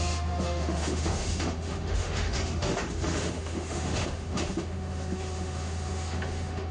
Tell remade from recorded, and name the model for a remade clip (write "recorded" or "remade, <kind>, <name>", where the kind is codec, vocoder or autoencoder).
remade, autoencoder, DAC-VAE